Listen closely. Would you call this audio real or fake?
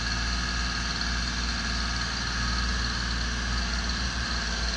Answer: real